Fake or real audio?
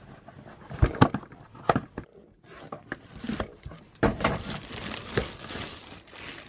real